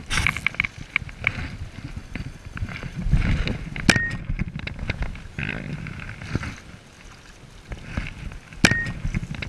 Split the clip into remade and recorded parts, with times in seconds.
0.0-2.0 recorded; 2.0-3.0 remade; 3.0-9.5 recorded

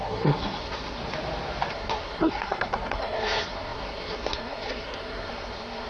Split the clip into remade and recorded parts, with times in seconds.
0.0-1.0 remade; 1.0-1.7 recorded; 1.7-5.9 remade

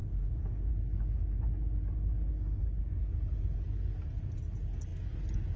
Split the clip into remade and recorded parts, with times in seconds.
0.0-0.7 remade; 0.7-5.6 recorded